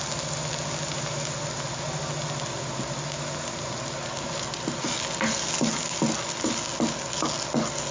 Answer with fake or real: real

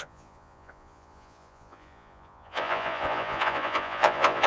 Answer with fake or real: fake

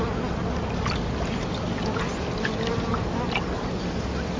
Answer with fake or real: real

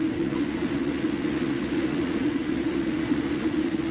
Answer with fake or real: fake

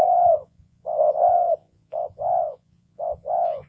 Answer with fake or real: fake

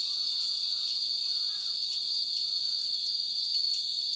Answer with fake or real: fake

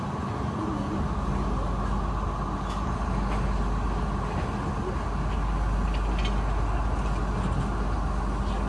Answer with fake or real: real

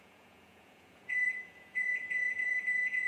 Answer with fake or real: fake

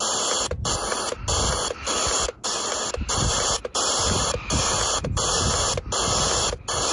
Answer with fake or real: real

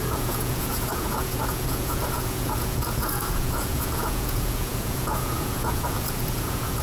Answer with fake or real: fake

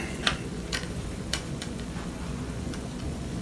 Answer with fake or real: fake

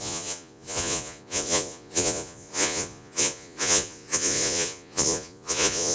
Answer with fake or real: fake